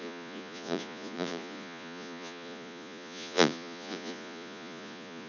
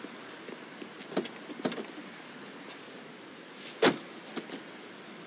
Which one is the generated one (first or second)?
first